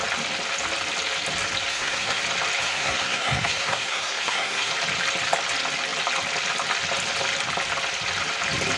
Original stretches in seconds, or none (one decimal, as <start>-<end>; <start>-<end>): 0.0-1.7; 2.2-2.6; 4.7-8.8